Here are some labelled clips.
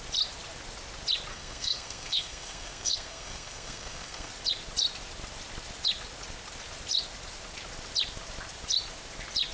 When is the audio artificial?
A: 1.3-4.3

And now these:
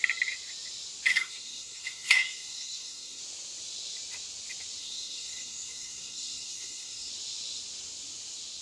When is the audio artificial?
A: 1.1-3.2; 4.8-7.1

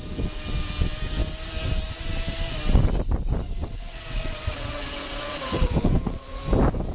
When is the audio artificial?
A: 3.6-6.4

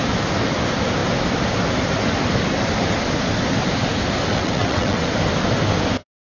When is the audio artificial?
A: 4.3-5.1